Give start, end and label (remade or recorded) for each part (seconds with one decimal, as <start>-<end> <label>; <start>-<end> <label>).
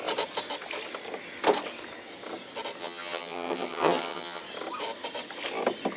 0.0-2.8 recorded; 2.8-4.4 remade; 4.4-6.0 recorded